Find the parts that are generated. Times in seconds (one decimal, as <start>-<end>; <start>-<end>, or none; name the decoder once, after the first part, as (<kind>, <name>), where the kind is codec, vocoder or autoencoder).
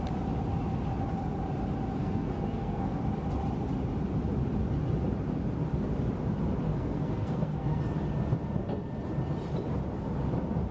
2.0-3.0 (codec, SNAC); 6.7-7.8